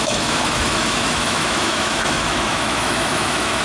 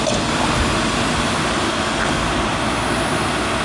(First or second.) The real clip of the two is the second